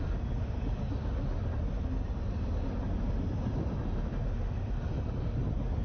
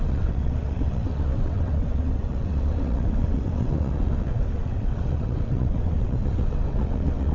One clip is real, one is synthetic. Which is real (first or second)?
first